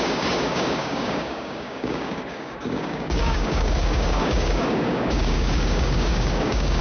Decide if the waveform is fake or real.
fake